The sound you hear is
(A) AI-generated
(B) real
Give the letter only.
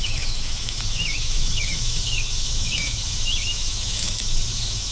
A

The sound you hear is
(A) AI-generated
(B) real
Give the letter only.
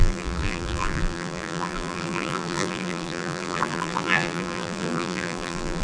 A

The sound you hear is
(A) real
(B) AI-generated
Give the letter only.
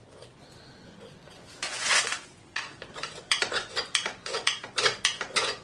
B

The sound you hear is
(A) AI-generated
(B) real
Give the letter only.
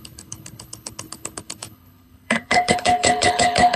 A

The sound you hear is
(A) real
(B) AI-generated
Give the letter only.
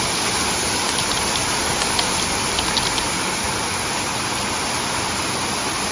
A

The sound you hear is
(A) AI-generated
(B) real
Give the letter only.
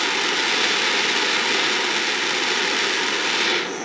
B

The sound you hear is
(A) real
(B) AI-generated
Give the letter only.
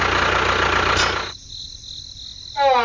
A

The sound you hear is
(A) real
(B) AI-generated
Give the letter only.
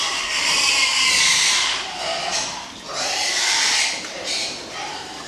B